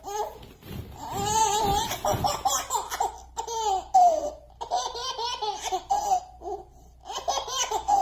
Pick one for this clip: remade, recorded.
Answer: recorded